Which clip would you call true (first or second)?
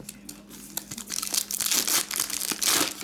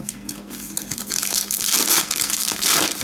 first